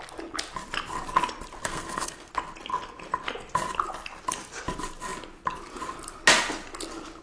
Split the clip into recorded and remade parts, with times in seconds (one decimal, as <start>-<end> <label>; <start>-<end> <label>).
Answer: 0.0-1.6 recorded; 1.6-2.3 remade; 2.3-7.2 recorded